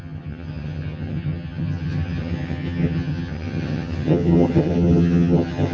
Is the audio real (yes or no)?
no